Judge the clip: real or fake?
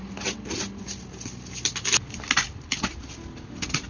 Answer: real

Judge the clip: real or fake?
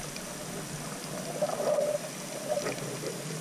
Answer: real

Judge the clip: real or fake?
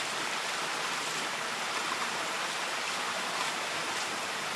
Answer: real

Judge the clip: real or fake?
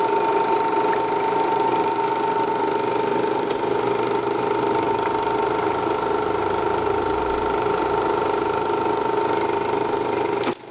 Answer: fake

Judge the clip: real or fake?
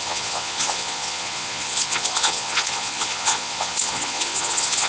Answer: fake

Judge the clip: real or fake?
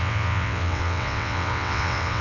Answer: fake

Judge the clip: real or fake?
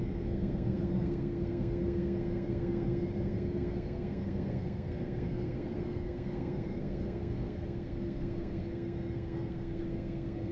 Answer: fake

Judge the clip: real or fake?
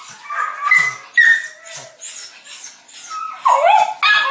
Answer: real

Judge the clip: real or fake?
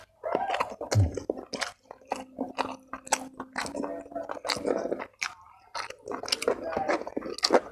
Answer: real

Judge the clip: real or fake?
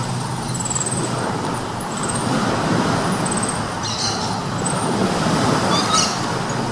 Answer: real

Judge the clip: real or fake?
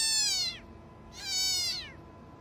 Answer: real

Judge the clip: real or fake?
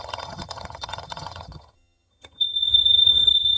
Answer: fake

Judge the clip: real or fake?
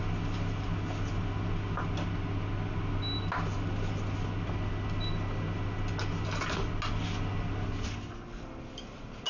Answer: real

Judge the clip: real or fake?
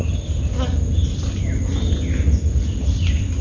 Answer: real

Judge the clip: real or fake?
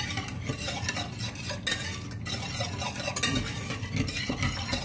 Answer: real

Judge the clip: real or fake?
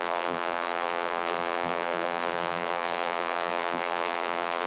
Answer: fake